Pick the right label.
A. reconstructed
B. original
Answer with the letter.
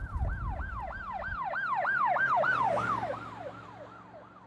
B